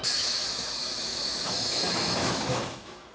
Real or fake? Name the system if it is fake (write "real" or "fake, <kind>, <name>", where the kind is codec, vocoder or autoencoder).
fake, autoencoder, DAC-VAE